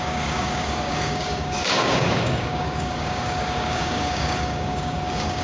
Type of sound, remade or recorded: remade